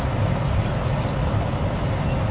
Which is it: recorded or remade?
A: recorded